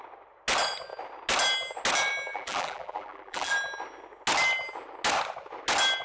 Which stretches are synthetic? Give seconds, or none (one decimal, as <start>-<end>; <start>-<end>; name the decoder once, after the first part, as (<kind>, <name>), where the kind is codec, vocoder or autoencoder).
2.3-3.5 (vocoder, BigVGAN v2)